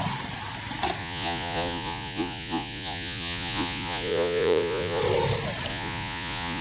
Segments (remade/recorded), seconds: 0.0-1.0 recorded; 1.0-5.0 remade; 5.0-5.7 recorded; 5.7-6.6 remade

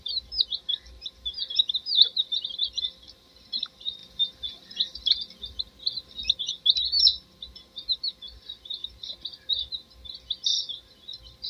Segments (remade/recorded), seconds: 0.0-11.5 recorded

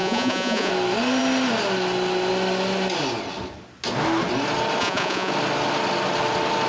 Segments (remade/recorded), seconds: 0.0-0.7 remade; 0.7-4.8 recorded; 4.8-5.3 remade; 5.3-6.7 recorded

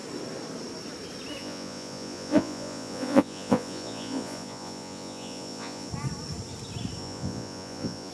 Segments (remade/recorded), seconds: 0.0-1.4 recorded; 1.4-5.9 remade; 5.9-7.0 recorded; 7.0-8.1 remade

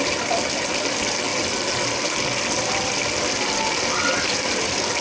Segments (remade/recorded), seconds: 0.0-5.0 recorded

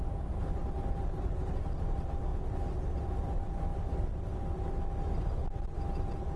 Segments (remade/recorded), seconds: 0.0-6.4 recorded

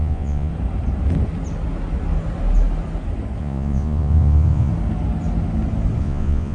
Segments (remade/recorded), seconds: 0.0-0.5 remade; 0.5-3.4 recorded; 3.4-4.7 remade; 4.7-6.0 recorded; 6.0-6.5 remade

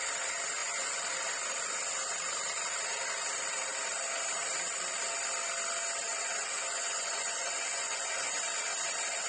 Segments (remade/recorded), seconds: 0.0-0.6 recorded; 0.6-1.1 remade; 1.1-6.1 recorded; 6.1-8.3 remade; 8.3-9.3 recorded